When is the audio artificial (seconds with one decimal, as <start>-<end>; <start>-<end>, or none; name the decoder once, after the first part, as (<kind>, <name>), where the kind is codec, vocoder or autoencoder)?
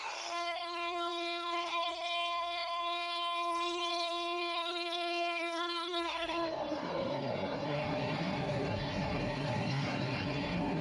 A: 0.0-10.8 (codec, SNAC)